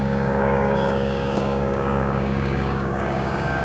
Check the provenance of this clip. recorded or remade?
remade